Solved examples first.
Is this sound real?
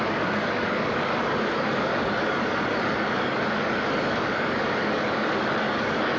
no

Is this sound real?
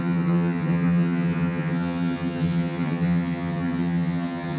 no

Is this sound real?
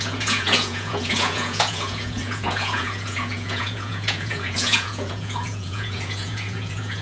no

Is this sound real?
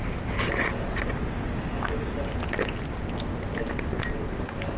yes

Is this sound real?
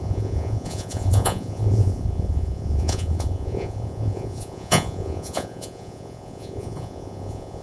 no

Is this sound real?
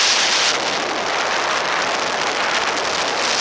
yes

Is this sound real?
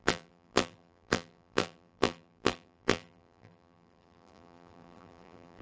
no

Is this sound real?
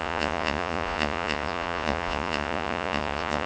no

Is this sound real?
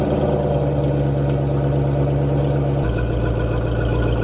yes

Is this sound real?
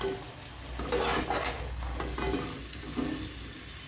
yes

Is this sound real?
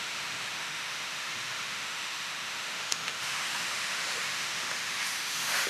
no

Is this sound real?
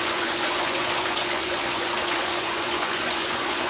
no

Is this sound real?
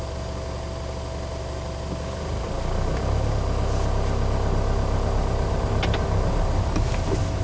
yes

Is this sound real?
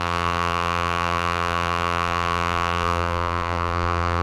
no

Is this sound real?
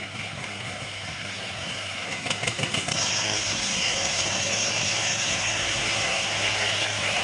no